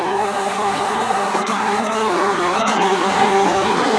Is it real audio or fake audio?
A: fake